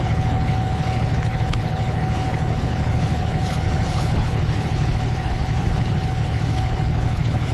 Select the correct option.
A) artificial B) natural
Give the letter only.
A